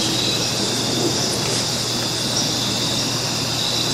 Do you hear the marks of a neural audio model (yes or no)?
no